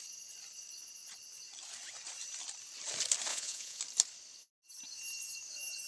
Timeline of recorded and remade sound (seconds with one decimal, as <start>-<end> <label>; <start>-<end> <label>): 0.0-3.3 recorded; 3.3-3.8 remade; 3.8-5.9 recorded